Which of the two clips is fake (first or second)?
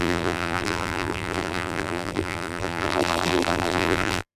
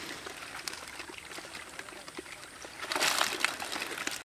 first